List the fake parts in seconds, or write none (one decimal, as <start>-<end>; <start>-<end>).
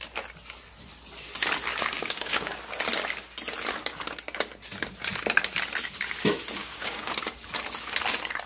1.7-2.6; 6.6-7.1